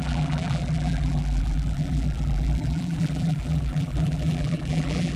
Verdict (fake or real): fake